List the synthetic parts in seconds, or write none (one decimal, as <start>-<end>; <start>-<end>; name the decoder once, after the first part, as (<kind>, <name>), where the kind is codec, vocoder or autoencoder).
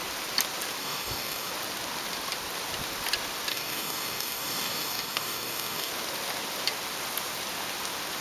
0.8-1.5 (codec, DAC); 3.5-5.9